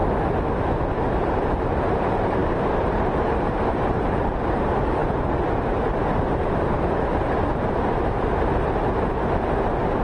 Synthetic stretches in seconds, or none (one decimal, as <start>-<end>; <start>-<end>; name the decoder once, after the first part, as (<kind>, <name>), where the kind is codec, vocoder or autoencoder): 1.1-10.0 (vocoder, BigVGAN v2)